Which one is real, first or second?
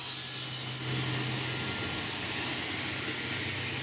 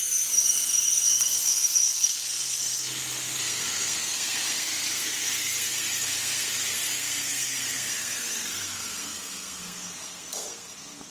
first